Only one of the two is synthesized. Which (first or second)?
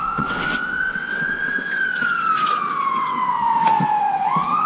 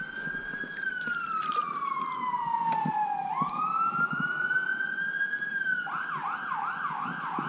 first